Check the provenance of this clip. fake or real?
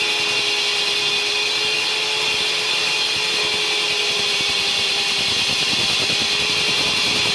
real